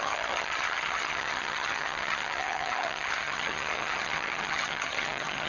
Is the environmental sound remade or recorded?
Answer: remade